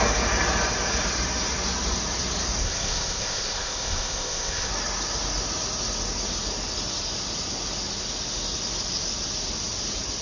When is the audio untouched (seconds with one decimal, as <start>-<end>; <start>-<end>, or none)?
0.0-2.6; 4.7-10.2